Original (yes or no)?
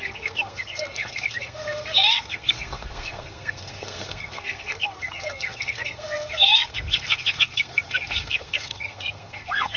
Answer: no